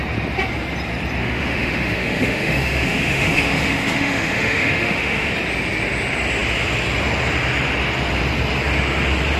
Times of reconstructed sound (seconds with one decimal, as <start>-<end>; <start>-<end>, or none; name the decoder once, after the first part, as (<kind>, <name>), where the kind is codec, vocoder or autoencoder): 1.2-5.3 (autoencoder, DAC-VAE)